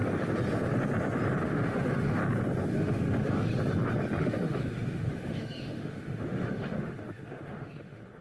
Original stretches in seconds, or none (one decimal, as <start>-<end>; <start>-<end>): 0.0-1.4; 2.2-2.7; 3.5-4.2